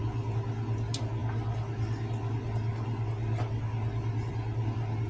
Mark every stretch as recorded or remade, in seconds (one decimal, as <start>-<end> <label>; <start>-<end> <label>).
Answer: 0.0-5.1 recorded